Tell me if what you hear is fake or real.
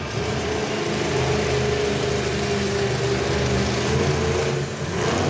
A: real